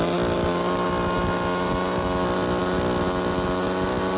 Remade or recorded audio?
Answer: recorded